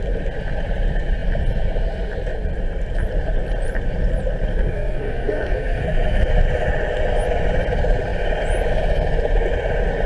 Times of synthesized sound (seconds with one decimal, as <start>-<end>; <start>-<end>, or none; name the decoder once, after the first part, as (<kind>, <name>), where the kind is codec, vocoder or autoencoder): 4.5-6.3 (codec, SNAC)